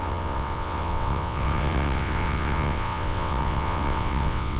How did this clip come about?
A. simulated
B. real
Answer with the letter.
A